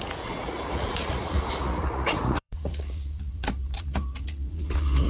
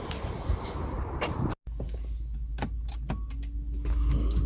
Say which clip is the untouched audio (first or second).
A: second